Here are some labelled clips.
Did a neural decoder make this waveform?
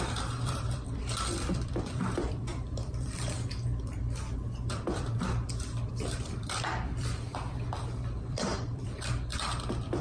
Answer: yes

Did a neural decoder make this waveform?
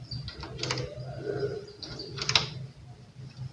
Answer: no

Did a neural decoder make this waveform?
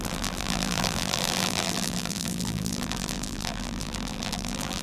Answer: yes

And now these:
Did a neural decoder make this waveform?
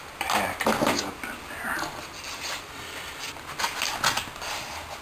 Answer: no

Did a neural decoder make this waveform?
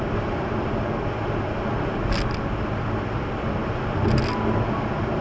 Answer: no